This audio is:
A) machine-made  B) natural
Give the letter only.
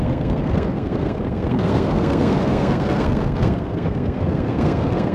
A